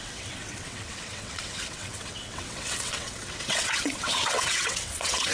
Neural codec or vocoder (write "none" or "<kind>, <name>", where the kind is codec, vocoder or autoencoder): vocoder, WaveNeXt